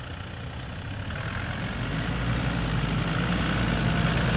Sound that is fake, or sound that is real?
real